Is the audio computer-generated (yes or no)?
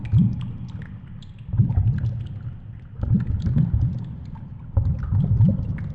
no